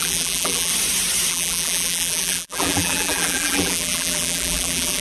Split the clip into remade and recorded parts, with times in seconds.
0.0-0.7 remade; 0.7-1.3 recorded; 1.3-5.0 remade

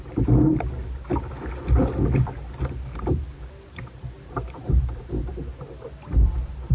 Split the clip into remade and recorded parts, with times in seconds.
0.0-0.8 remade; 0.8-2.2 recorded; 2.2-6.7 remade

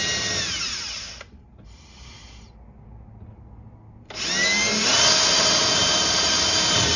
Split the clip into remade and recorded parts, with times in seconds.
0.0-2.2 remade; 2.2-5.2 recorded; 5.2-7.0 remade

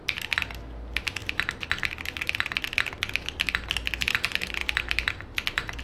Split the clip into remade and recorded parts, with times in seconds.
0.0-4.6 recorded; 4.6-5.8 remade

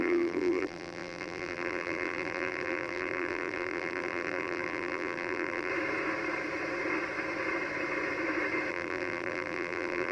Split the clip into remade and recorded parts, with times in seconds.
0.0-5.7 remade; 5.7-8.7 recorded; 8.7-10.1 remade

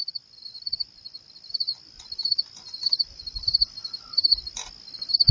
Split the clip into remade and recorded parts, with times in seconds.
0.0-3.2 remade; 3.2-5.3 recorded

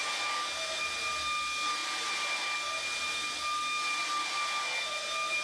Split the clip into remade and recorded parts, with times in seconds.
0.0-5.4 recorded

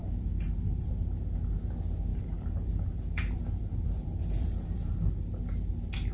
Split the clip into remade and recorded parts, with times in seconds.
0.0-0.9 remade; 0.9-2.1 recorded; 2.1-5.1 remade; 5.1-6.1 recorded